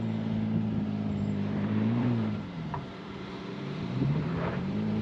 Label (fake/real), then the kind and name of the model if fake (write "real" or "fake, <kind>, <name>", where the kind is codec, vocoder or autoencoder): fake, vocoder, BigVGAN v2